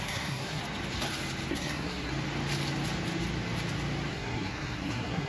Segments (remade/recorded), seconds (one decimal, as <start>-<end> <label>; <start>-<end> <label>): 0.0-0.6 remade; 0.6-1.5 recorded; 1.5-2.1 remade; 2.1-4.1 recorded; 4.1-5.3 remade